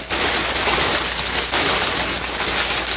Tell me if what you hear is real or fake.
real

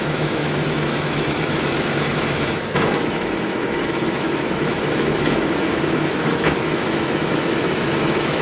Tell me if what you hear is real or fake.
fake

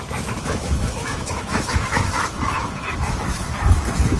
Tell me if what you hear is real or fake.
fake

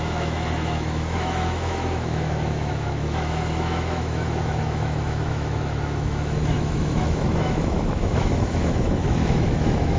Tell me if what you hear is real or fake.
fake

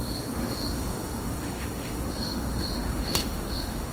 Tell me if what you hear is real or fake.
fake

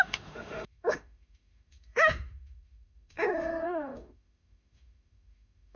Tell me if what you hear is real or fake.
fake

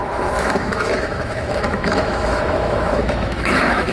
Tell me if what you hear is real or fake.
fake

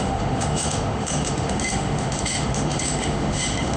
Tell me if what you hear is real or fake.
fake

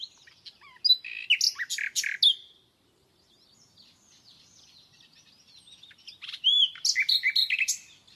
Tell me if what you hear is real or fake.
real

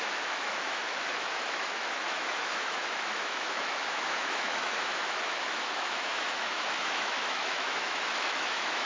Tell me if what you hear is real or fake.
fake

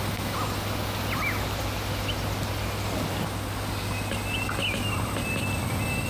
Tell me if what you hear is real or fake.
real